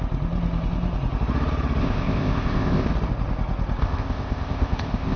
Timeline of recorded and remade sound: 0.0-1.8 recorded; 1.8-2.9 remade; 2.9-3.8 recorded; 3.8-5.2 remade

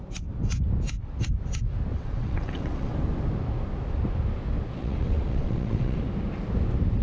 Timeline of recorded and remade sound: 0.0-1.9 recorded; 1.9-2.9 remade; 2.9-4.8 recorded; 4.8-6.0 remade; 6.0-7.0 recorded

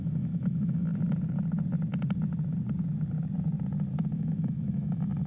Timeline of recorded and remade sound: 0.0-0.9 remade; 0.9-4.1 recorded; 4.1-5.3 remade